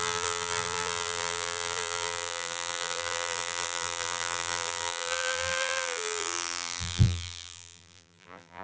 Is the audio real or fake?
fake